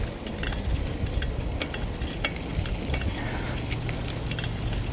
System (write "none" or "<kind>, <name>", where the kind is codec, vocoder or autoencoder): none